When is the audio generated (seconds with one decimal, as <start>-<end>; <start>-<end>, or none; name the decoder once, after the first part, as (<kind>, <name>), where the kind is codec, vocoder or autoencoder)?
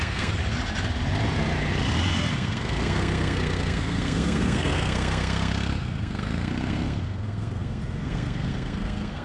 0.0-0.4 (codec, SNAC); 2.3-9.2